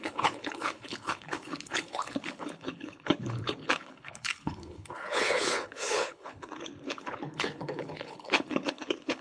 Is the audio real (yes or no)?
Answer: no